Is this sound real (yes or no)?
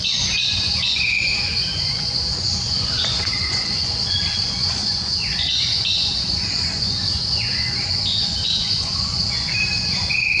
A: no